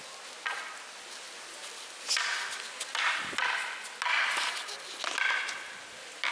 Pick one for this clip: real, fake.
real